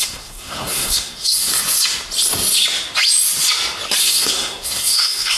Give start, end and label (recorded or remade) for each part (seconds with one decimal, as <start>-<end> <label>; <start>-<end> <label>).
0.0-1.5 remade; 1.5-4.0 recorded; 4.0-5.4 remade